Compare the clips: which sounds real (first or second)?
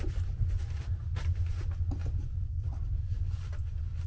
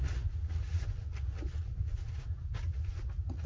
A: first